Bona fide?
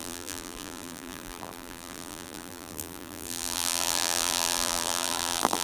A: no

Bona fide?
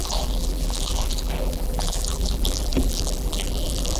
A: no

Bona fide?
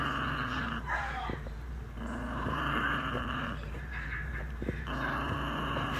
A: no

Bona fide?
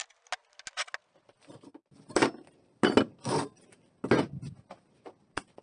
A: yes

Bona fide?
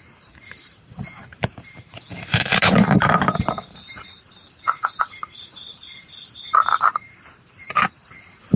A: no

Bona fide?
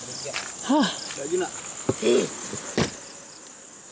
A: yes